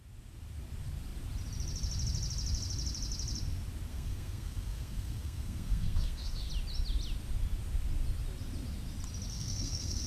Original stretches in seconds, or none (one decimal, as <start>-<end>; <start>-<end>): 0.0-3.9; 6.5-9.3